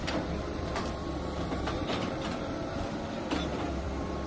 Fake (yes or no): yes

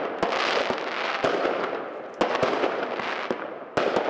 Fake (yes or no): no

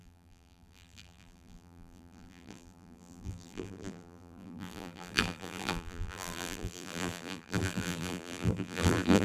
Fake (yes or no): yes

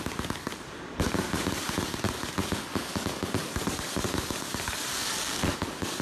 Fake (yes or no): yes